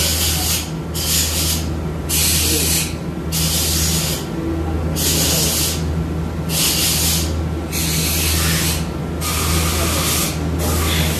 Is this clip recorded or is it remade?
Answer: recorded